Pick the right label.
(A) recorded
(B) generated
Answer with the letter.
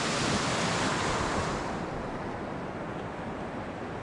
A